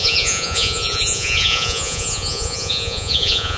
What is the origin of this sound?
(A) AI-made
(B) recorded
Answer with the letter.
A